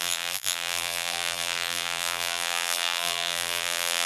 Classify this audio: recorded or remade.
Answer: remade